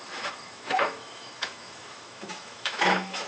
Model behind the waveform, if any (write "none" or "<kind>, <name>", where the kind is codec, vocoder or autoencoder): autoencoder, DAC-VAE